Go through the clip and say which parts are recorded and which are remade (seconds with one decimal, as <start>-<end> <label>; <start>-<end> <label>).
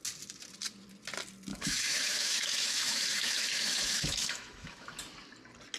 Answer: 0.0-1.5 recorded; 1.5-5.0 remade; 5.0-5.8 recorded